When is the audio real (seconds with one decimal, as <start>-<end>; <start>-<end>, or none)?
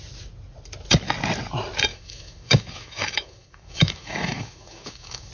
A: 0.0-1.9